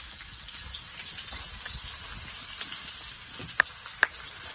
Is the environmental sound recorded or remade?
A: recorded